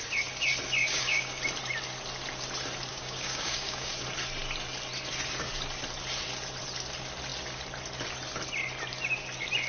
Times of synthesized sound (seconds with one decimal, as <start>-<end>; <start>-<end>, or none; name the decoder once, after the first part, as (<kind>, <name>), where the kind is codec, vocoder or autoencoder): 0.8-1.4 (codec, DAC); 2.9-3.9